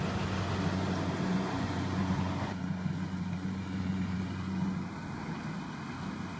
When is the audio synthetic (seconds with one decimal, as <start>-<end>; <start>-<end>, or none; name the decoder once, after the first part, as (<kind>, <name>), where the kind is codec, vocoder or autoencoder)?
1.3-4.7 (vocoder, Vocos)